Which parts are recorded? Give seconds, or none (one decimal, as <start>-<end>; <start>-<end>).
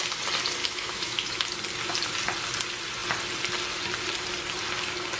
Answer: 0.0-0.6; 1.5-5.2